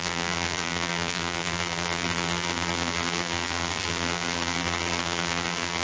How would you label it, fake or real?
fake